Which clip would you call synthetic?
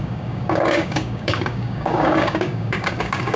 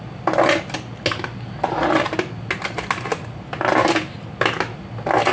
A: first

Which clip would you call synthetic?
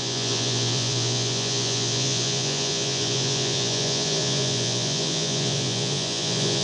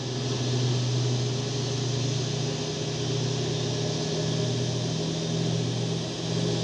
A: first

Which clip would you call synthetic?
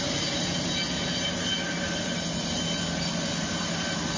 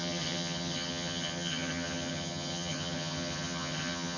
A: second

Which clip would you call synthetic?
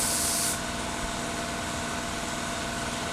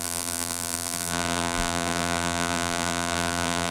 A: second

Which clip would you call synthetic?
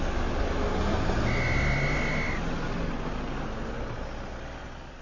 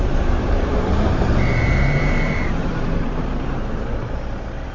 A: second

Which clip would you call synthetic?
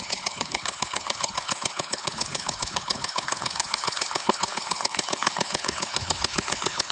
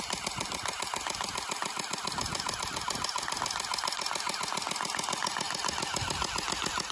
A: first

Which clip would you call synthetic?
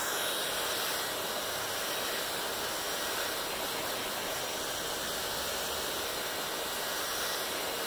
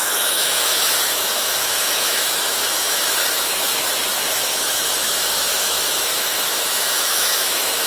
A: second